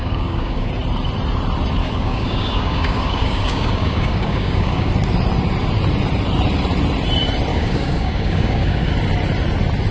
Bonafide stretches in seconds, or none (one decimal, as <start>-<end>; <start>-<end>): 0.7-1.8; 4.9-7.5; 8.9-9.9